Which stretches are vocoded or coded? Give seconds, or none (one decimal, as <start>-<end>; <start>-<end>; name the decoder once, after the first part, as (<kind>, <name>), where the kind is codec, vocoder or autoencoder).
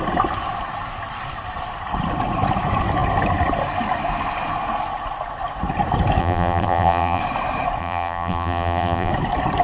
6.2-7.2 (vocoder, BigVGAN v2); 7.8-9.1